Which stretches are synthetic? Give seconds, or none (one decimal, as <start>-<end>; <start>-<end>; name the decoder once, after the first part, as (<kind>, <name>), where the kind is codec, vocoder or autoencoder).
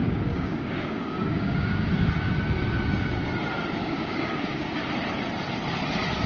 0.0-2.1 (codec, DAC); 3.8-4.8